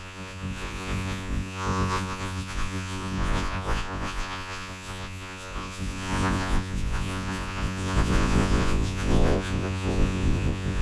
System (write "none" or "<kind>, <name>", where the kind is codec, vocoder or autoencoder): vocoder, Vocos